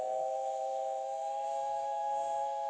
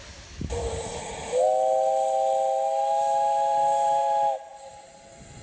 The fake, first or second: first